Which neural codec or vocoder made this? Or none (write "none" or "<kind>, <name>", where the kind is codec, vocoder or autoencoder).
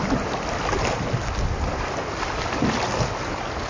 none